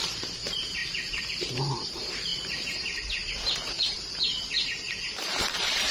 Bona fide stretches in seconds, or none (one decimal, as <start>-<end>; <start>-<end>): 0.8-1.7